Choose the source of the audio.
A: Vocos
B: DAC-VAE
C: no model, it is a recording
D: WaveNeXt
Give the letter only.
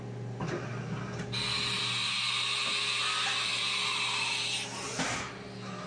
C